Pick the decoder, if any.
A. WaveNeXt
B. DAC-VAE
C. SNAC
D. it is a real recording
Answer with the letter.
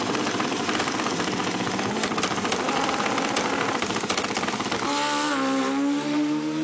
D